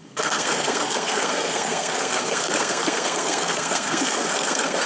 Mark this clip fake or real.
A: fake